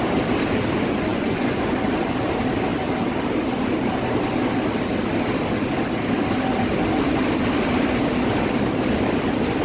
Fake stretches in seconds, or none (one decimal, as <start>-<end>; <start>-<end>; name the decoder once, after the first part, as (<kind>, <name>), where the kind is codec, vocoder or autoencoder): 1.1-1.7 (vocoder, Vocos)

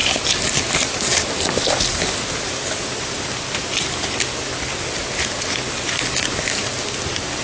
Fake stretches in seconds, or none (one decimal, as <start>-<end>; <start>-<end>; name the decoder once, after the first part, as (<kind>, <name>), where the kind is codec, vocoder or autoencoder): none

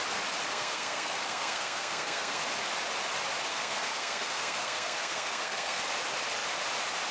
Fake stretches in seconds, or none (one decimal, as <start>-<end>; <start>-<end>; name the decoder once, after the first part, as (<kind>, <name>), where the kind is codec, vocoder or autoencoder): 0.5-2.4 (codec, SNAC); 3.5-5.8

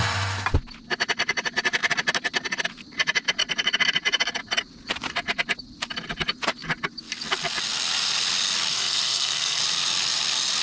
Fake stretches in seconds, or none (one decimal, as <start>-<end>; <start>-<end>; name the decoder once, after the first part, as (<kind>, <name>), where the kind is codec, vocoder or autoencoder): 8.7-9.6 (codec, SNAC)

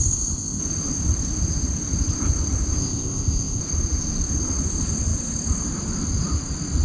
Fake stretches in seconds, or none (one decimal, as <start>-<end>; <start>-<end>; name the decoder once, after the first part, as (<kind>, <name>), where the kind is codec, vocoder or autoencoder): 0.0-0.6 (codec, ZipCodec); 2.8-3.6

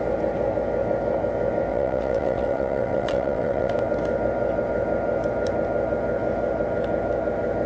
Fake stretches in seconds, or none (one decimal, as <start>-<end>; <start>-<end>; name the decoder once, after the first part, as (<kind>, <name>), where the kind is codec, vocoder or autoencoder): 1.7-3.7 (vocoder, WaveNeXt)